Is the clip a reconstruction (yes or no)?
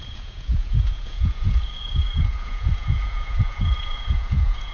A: yes